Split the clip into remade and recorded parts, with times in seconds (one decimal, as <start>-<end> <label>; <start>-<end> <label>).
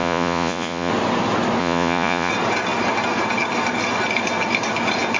0.0-0.9 remade; 0.9-1.6 recorded; 1.6-2.3 remade; 2.3-5.2 recorded